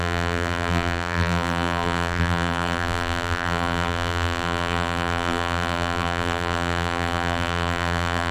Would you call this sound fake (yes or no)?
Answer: yes